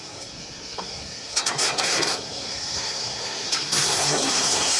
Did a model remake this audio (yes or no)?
yes